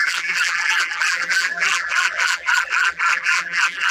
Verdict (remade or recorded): remade